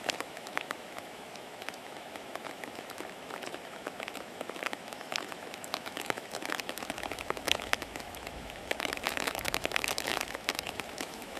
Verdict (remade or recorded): remade